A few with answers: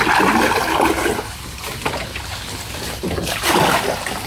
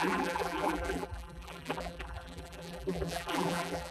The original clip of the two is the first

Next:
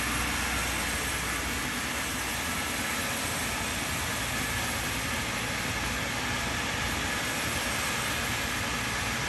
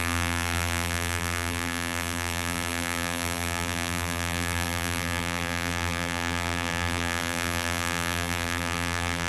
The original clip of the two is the first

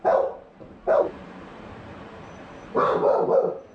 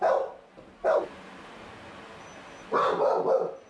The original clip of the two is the second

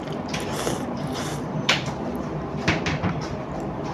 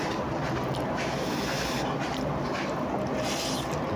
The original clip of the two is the second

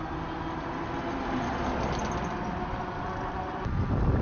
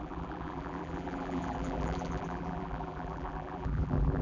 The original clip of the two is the first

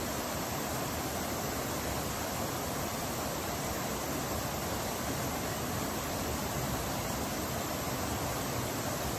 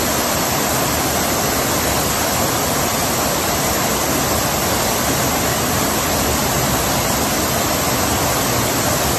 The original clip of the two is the second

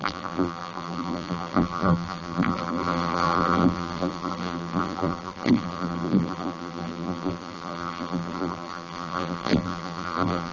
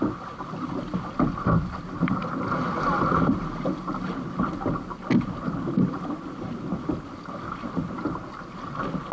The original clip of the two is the second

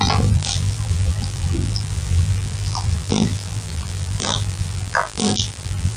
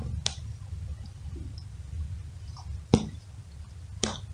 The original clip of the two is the second